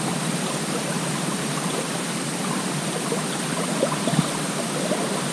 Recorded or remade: remade